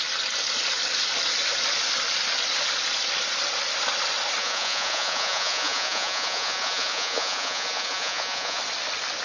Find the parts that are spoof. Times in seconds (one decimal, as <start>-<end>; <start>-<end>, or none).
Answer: 4.4-8.6